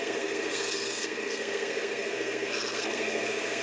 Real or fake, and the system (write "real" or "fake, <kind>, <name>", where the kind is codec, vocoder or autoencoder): fake, codec, SNAC